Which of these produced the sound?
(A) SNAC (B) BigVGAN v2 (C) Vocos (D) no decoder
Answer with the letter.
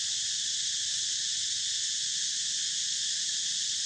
D